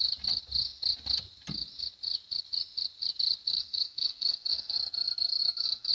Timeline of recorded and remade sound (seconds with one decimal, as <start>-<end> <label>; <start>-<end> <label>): 0.0-3.5 recorded; 3.5-5.9 remade